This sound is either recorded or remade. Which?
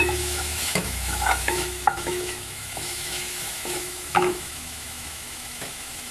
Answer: remade